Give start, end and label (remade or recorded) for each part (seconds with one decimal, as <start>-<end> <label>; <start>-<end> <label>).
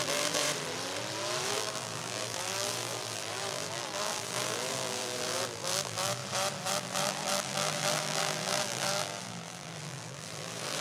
0.0-0.4 remade; 0.4-1.5 recorded; 1.5-6.2 remade; 6.2-6.7 recorded; 6.7-10.8 remade